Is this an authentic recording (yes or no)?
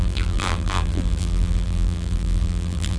no